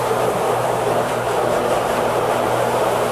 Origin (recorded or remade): remade